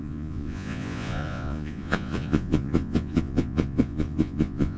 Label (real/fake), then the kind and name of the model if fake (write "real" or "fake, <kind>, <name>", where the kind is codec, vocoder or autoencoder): fake, vocoder, Vocos